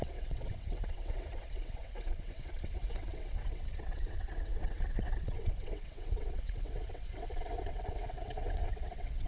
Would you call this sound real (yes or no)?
no